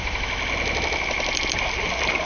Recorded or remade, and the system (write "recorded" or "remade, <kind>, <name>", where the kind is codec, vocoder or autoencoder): recorded